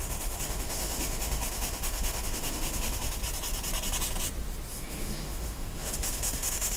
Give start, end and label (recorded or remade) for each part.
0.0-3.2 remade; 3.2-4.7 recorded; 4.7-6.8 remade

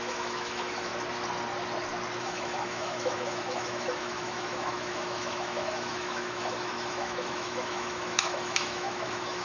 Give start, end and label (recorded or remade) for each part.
0.0-0.9 remade; 0.9-2.2 recorded; 2.2-9.4 remade

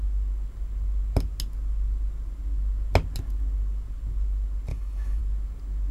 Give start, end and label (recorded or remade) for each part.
0.0-4.7 recorded; 4.7-5.2 remade; 5.2-5.9 recorded

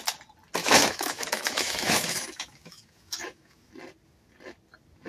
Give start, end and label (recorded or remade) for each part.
0.0-0.6 recorded; 0.6-3.7 remade; 3.7-5.1 recorded

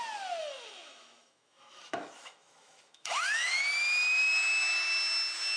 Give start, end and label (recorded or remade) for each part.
0.0-0.4 recorded; 0.4-3.6 remade; 3.6-5.6 recorded

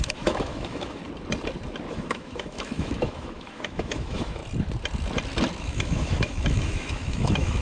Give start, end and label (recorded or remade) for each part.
0.0-1.0 remade; 1.0-1.9 recorded; 1.9-4.4 remade; 4.4-5.6 recorded; 5.6-7.6 remade

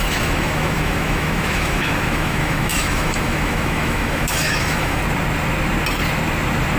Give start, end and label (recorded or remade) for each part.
0.0-5.0 remade; 5.0-6.8 recorded